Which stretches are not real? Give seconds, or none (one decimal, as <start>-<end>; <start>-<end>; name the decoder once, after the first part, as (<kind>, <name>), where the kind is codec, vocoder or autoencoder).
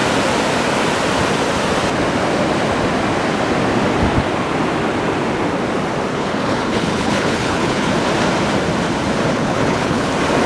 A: 6.1-7.9 (codec, HILCodec); 9.3-10.1